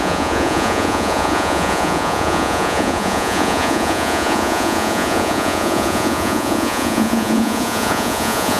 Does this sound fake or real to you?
fake